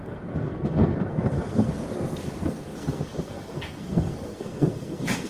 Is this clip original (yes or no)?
no